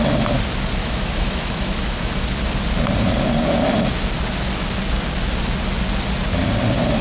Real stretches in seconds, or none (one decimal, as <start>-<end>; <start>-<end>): 0.0-0.8; 2.3-7.0